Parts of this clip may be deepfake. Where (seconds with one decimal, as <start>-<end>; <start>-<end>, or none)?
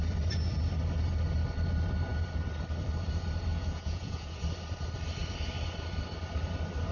3.5-4.4